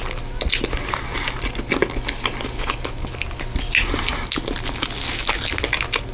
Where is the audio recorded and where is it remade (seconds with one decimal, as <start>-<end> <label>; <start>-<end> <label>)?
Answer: 0.0-4.1 recorded; 4.1-4.7 remade; 4.7-6.1 recorded